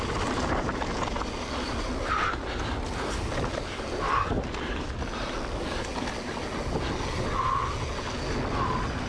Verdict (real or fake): real